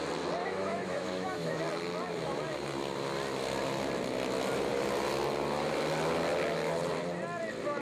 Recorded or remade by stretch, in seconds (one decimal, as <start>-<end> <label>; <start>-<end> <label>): 0.0-0.4 recorded; 0.4-1.6 remade; 1.6-7.8 recorded